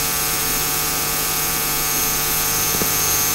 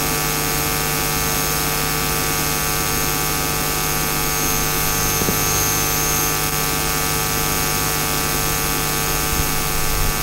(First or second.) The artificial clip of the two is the first